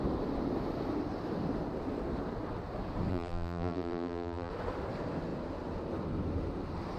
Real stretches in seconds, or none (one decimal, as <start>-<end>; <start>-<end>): 0.0-3.1; 4.5-7.0